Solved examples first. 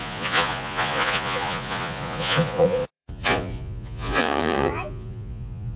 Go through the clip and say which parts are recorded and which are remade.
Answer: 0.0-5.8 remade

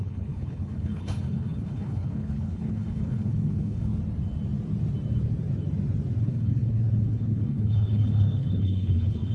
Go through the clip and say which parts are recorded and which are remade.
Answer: 0.0-3.9 remade; 3.9-6.2 recorded; 6.2-9.3 remade

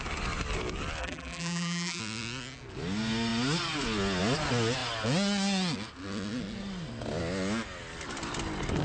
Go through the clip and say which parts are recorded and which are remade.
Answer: 0.0-1.0 recorded; 1.0-2.0 remade; 2.0-8.8 recorded

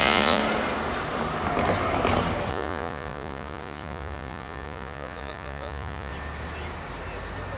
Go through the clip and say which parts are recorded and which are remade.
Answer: 0.0-0.4 remade; 0.4-2.5 recorded; 2.5-6.1 remade; 6.1-7.6 recorded